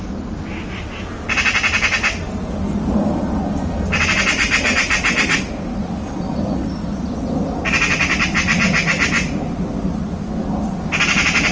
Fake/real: real